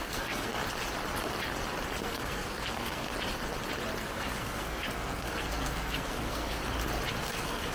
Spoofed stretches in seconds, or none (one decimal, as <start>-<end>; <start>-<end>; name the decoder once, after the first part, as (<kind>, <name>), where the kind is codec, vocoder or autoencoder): 0.0-0.6 (codec, SNAC); 2.0-3.1; 4.0-6.6; 7.2-7.7